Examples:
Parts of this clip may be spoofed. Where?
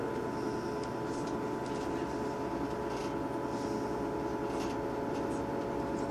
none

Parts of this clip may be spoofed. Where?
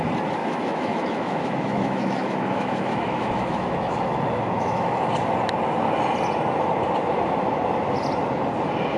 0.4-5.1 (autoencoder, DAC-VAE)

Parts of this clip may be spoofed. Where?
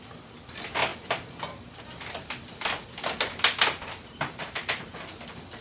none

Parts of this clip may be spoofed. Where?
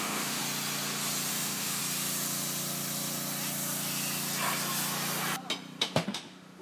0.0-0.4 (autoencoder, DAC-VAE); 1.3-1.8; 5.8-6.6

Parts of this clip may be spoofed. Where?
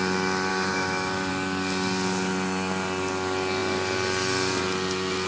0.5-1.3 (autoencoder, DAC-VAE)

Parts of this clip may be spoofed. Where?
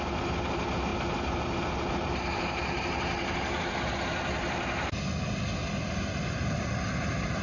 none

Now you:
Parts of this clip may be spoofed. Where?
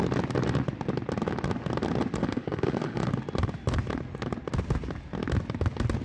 2.2-3.1 (autoencoder, DAC-VAE)